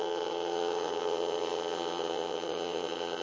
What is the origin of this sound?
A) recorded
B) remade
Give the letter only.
B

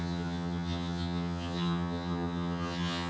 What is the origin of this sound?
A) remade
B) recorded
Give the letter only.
A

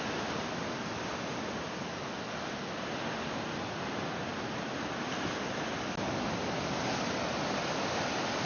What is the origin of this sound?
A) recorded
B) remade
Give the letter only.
A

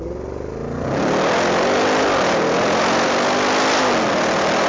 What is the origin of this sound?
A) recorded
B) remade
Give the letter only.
A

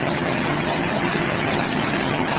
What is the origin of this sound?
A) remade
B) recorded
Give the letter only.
A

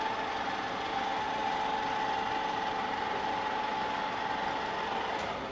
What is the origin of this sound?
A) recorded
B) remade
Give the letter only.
A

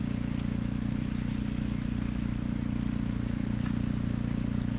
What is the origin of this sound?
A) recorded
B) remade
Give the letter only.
A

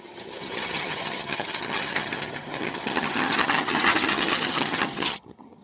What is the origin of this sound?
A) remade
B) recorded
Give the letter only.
A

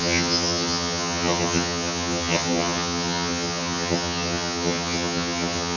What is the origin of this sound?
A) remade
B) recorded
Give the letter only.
A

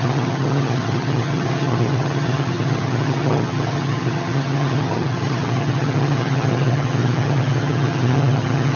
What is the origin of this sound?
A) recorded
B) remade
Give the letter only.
B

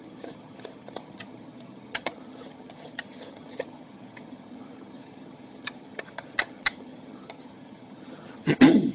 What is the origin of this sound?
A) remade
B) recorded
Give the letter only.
A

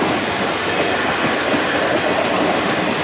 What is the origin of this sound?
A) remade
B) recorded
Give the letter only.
B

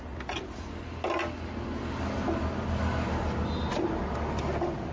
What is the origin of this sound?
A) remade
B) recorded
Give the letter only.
B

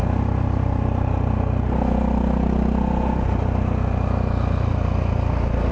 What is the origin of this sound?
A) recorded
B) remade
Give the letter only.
A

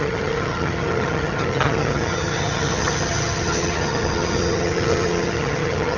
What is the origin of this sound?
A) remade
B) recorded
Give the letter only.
A